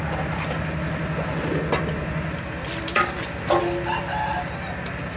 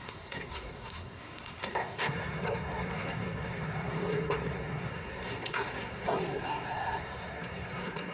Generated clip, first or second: second